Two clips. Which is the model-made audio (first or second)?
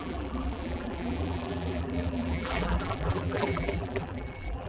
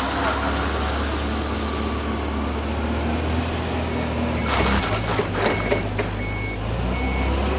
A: first